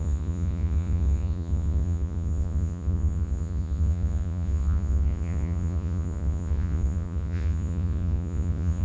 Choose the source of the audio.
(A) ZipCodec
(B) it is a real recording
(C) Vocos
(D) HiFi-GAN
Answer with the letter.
C